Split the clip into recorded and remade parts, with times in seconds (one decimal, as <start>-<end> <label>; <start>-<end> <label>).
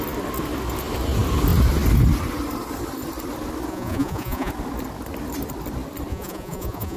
0.0-3.7 recorded; 3.7-4.5 remade; 4.5-6.1 recorded; 6.1-7.0 remade